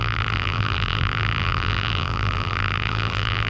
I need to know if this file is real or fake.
fake